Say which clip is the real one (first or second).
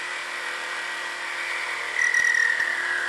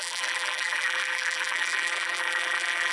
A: first